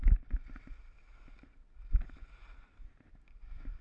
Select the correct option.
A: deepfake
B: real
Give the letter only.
B